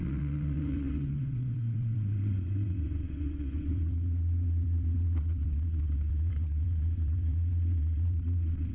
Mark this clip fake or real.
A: fake